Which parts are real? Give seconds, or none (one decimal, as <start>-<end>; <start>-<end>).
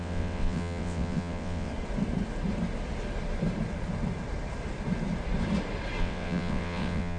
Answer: 1.7-6.0